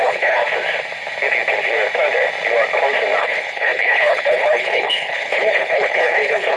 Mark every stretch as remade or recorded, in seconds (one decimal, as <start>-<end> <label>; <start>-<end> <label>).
0.0-0.4 remade; 0.4-3.2 recorded; 3.2-6.6 remade